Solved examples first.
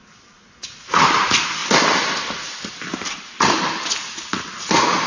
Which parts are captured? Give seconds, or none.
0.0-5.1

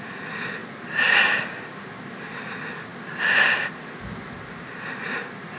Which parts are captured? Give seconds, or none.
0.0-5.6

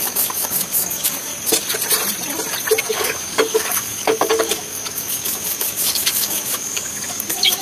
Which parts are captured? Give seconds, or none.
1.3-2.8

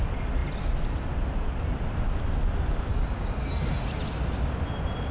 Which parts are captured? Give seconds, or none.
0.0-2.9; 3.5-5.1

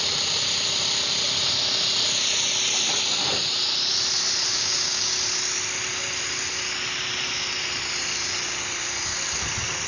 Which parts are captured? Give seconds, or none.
0.0-4.5; 5.1-9.9

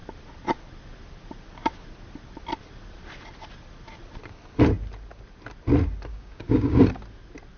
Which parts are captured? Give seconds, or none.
0.0-6.1; 6.8-7.6

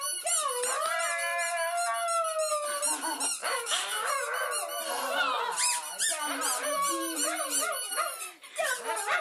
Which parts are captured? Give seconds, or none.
0.0-3.4; 4.1-9.2

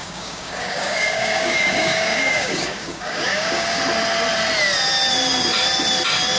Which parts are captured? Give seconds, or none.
3.8-6.4